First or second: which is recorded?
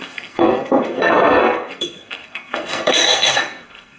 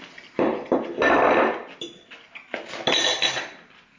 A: second